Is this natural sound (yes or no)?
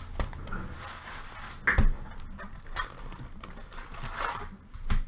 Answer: yes